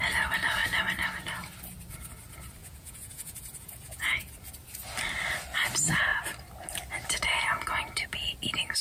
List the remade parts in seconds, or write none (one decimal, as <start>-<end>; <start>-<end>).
2.6-4.2